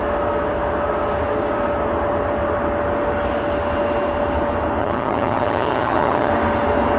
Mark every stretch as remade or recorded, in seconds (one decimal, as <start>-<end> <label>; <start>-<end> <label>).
0.0-4.8 recorded; 4.8-6.3 remade; 6.3-7.0 recorded